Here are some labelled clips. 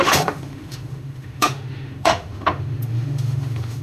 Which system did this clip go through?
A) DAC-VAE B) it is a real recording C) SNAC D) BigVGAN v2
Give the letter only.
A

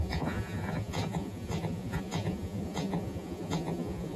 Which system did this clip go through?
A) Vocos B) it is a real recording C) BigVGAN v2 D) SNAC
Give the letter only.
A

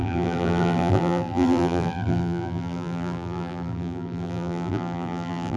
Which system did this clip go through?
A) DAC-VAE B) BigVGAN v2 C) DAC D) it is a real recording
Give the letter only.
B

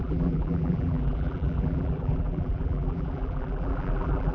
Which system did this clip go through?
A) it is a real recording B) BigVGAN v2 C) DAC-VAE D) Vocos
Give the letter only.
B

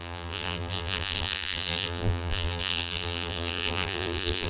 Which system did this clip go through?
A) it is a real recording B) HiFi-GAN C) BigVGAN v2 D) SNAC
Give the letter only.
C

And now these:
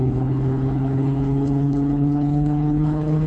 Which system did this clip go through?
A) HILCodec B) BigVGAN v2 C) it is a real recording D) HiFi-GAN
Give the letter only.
A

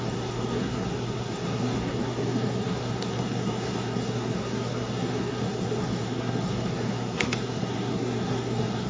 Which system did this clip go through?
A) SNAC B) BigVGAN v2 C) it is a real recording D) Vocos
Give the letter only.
A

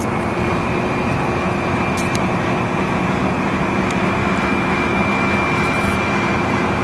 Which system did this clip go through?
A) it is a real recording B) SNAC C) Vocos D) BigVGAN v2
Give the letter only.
D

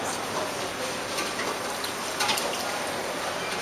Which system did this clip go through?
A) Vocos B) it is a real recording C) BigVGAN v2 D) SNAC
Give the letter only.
B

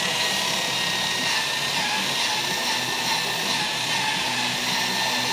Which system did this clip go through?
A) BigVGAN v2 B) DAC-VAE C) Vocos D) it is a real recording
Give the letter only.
D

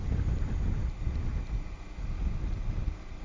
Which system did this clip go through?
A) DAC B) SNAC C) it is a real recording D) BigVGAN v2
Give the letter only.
C